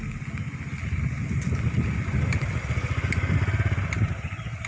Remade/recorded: recorded